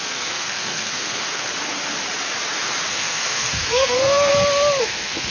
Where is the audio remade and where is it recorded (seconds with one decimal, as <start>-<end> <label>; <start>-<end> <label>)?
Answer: 0.0-1.5 remade; 1.5-2.9 recorded; 2.9-4.3 remade; 4.3-4.8 recorded; 4.8-5.3 remade